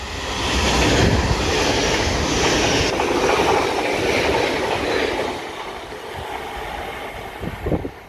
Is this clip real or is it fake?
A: real